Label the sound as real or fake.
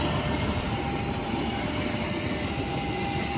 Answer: real